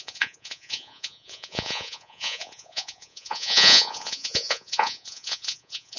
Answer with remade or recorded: remade